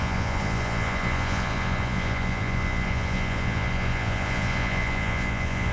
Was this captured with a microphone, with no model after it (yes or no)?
no